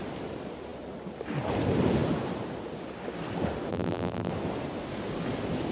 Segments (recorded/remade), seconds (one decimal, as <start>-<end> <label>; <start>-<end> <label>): 0.0-3.7 recorded; 3.7-4.3 remade; 4.3-5.7 recorded